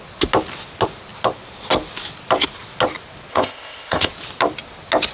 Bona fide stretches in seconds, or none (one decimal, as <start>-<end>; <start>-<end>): 0.0-3.3; 4.1-5.1